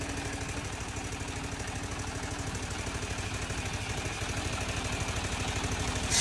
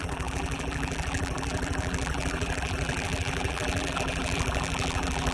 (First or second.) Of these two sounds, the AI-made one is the second